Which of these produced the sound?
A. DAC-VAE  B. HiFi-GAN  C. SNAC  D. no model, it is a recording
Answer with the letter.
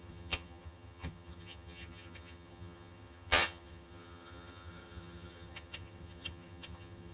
B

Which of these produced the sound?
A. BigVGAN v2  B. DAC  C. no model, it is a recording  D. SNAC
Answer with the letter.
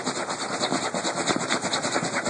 C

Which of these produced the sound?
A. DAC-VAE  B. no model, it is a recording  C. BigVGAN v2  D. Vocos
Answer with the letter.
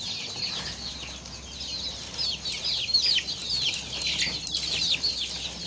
B